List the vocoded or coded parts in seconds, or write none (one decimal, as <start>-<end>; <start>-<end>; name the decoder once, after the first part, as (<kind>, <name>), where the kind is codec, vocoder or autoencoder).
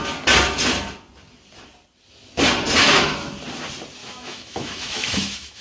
2.8-3.3 (autoencoder, DAC-VAE); 4.0-5.6